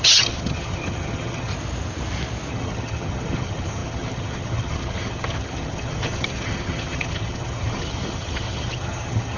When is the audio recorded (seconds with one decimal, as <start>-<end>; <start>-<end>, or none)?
1.5-2.5